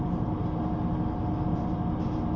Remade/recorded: recorded